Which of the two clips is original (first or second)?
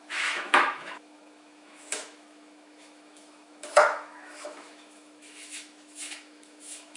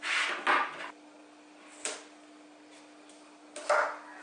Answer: second